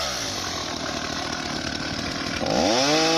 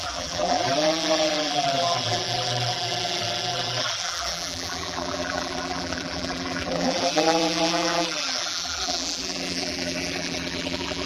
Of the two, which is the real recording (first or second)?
first